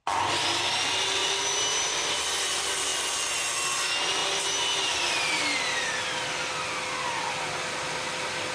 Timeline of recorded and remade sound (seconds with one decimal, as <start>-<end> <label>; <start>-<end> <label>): 0.0-8.5 recorded